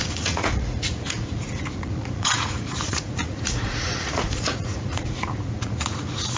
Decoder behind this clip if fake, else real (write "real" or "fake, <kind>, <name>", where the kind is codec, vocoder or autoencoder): fake, vocoder, Vocos